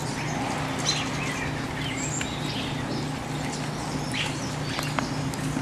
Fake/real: real